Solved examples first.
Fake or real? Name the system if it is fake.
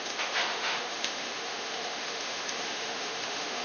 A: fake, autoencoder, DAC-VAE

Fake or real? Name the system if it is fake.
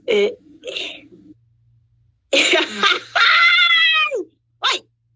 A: real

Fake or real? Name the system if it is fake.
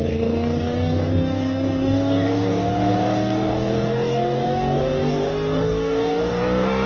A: fake, codec, DAC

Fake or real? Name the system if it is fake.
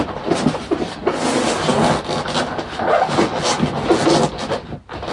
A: real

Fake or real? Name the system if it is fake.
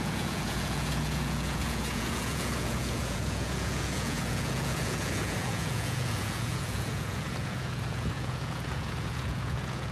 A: fake, vocoder, Vocos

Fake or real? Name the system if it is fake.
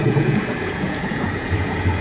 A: fake, vocoder, Vocos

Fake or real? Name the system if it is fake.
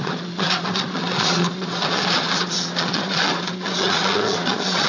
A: fake, vocoder, Vocos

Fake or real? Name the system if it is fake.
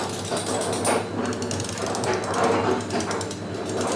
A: real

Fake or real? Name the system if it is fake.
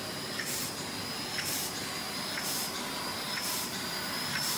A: fake, vocoder, BigVGAN v2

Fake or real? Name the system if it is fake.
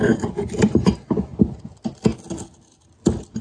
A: real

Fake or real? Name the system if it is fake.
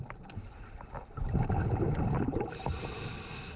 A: real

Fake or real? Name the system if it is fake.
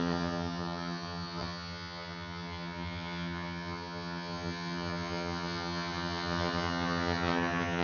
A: fake, vocoder, HiFi-GAN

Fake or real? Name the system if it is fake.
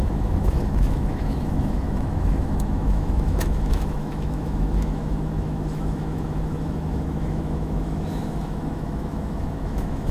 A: fake, autoencoder, DAC-VAE